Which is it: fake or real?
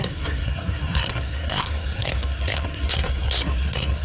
fake